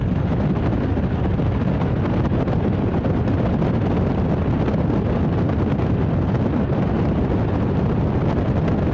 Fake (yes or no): no